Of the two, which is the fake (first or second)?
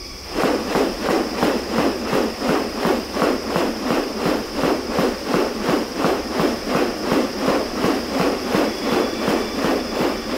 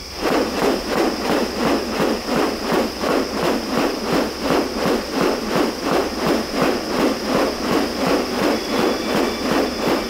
first